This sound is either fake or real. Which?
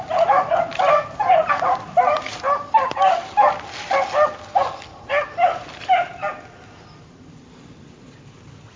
real